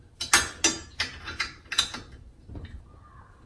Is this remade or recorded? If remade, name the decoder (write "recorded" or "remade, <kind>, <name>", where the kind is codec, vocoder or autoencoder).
recorded